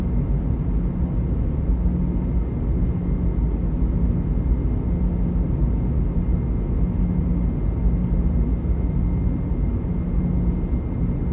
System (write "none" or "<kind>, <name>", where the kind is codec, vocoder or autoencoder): none